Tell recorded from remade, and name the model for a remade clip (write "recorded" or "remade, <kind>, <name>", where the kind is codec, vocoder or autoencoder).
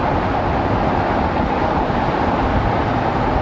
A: recorded